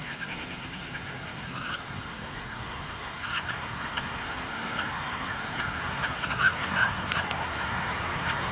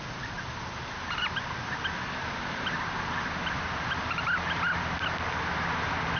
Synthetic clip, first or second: first